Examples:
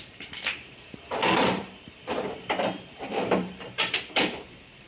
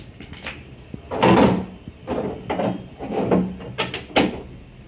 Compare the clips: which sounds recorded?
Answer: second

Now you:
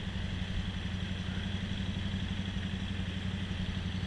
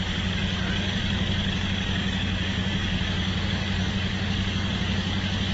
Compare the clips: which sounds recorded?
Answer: first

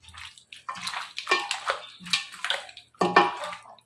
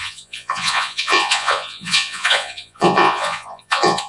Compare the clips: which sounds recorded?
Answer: first